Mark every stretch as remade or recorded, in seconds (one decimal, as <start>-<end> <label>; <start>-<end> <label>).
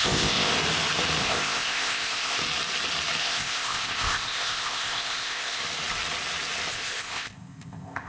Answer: 0.0-0.5 remade; 0.5-1.2 recorded; 1.2-2.4 remade; 2.4-3.2 recorded; 3.2-5.6 remade; 5.6-6.7 recorded; 6.7-8.1 remade